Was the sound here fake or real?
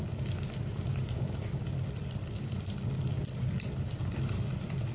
real